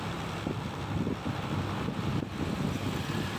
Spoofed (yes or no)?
no